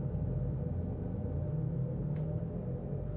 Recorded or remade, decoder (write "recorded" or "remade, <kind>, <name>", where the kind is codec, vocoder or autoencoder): recorded